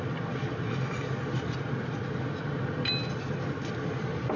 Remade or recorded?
recorded